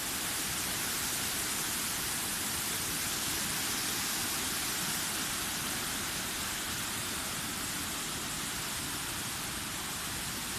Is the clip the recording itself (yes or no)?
no